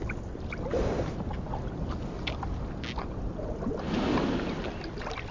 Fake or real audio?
real